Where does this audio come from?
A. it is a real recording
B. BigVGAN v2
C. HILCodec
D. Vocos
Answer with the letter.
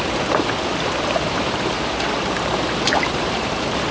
B